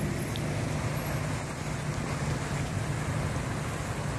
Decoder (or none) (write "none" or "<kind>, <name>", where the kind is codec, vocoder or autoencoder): none